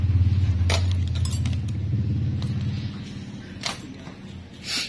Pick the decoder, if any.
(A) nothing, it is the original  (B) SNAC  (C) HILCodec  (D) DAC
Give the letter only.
A